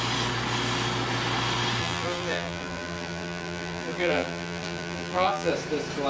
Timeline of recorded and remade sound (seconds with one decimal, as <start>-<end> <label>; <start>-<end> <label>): 0.0-1.8 recorded; 1.8-5.5 remade; 5.5-6.1 recorded